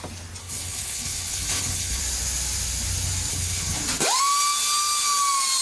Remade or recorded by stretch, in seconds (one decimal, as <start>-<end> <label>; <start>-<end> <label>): 0.0-0.4 recorded; 0.4-2.0 remade; 2.0-3.3 recorded; 3.3-3.8 remade; 3.8-5.6 recorded